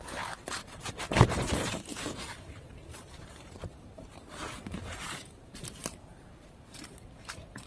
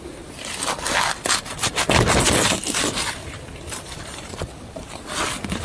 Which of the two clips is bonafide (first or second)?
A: second